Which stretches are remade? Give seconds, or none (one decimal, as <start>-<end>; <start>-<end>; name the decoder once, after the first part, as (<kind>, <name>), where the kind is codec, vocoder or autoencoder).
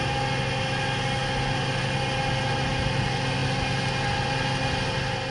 none